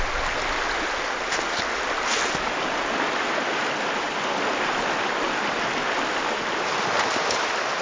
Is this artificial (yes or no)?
no